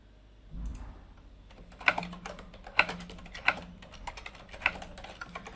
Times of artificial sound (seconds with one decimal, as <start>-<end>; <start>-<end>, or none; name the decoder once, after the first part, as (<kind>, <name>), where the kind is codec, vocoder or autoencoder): none